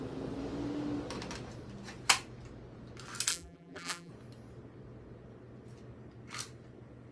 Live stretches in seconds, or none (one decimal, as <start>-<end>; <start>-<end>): 0.0-3.3; 4.1-7.1